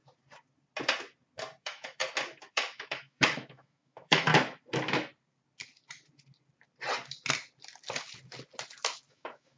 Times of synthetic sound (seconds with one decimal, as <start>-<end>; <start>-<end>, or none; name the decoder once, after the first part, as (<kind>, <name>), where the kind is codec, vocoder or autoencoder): 1.6-2.0 (autoencoder, DAC-VAE); 2.5-4.3; 9.1-9.6